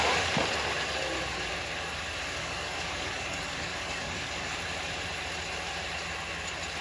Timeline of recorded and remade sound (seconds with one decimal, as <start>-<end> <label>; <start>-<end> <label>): 0.0-2.4 recorded; 2.4-4.6 remade; 4.6-6.8 recorded